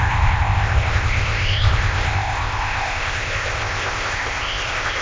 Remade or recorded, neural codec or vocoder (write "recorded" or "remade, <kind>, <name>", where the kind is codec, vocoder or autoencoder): remade, codec, ZipCodec